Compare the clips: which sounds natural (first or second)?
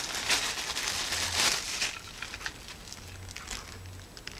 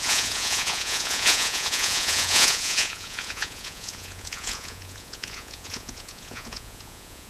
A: first